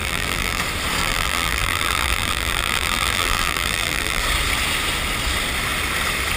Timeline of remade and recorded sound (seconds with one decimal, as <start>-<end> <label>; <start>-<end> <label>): 0.0-0.6 remade; 0.6-1.0 recorded; 1.0-4.2 remade; 4.2-6.4 recorded